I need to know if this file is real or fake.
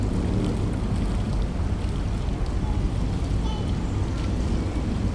real